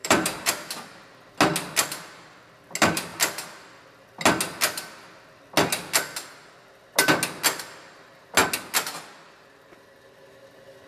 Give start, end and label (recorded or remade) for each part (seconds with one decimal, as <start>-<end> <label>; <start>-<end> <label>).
0.0-0.5 remade; 0.5-10.9 recorded